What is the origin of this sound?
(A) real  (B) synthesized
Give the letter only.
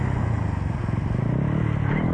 A